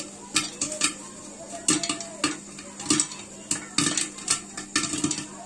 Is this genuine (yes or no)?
yes